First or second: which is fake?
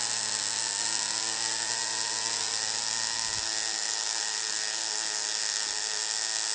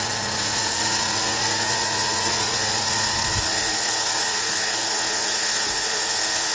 second